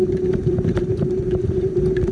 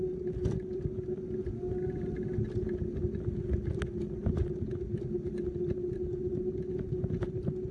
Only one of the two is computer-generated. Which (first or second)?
first